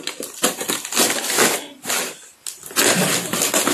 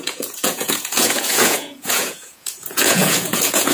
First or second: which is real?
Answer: first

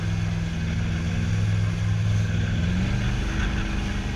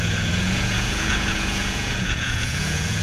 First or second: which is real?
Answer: first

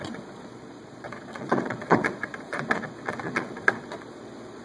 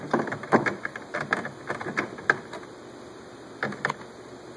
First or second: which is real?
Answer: second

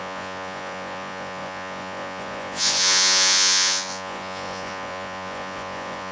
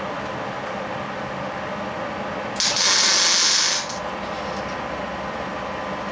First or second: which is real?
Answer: second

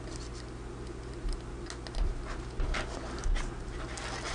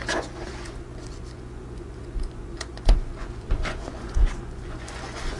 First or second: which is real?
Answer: first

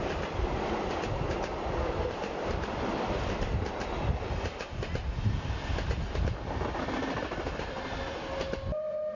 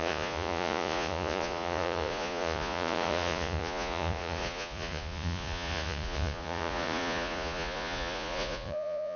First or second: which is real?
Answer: first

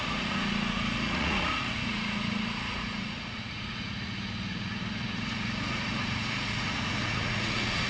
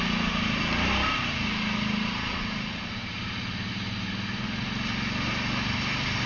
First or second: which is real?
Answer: second